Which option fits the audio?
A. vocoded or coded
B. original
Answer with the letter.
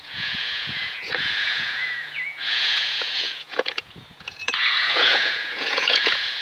A